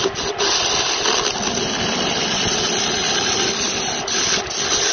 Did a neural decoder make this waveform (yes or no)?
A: no